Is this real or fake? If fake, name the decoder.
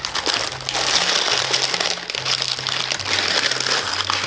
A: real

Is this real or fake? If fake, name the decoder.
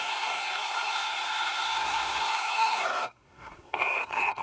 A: fake, codec, SNAC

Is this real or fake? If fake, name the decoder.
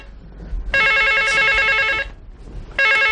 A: real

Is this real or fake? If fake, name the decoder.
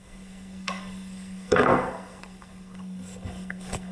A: fake, codec, SNAC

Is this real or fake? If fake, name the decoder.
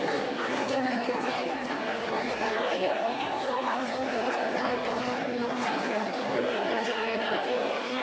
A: fake, codec, SNAC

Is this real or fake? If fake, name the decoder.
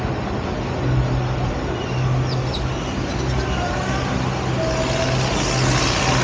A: real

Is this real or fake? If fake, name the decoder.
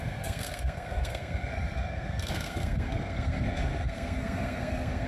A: fake, codec, SNAC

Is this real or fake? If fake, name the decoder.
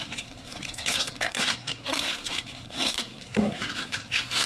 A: fake, codec, SNAC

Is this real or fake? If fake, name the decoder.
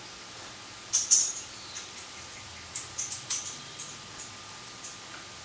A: real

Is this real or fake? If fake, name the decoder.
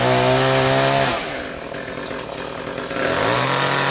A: real